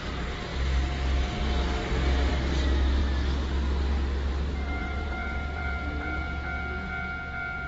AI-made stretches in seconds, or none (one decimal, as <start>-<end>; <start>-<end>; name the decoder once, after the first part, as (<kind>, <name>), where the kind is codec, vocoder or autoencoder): 4.8-6.2 (vocoder, BigVGAN v2)